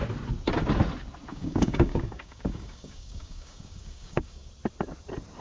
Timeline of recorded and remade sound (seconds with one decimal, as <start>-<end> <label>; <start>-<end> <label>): 0.0-1.3 recorded; 1.3-4.5 remade; 4.5-5.4 recorded